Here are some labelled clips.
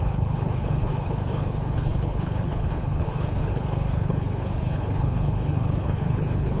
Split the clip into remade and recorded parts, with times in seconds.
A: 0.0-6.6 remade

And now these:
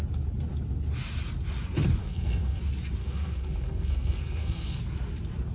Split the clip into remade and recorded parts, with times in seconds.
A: 0.0-2.0 recorded; 2.0-2.6 remade; 2.6-3.0 recorded; 3.0-4.8 remade; 4.8-5.5 recorded